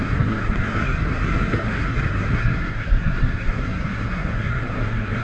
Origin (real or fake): fake